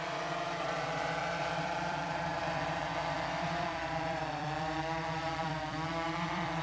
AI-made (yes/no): yes